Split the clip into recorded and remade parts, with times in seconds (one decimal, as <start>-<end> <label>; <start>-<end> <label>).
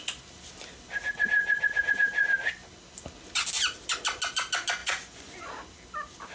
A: 0.0-4.8 recorded; 4.8-5.5 remade; 5.5-6.3 recorded